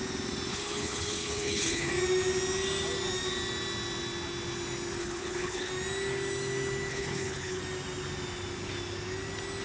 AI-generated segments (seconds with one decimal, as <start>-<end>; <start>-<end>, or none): 0.5-1.9; 5.0-5.7; 6.9-7.6